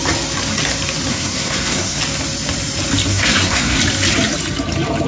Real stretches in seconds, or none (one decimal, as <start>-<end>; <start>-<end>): 0.0-1.1; 2.0-3.1; 3.8-5.1